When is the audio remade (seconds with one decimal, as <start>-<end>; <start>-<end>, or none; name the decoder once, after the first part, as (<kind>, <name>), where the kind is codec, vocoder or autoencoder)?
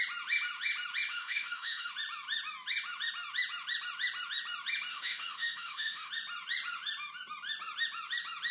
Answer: 1.1-1.9 (autoencoder, DAC-VAE); 4.9-6.1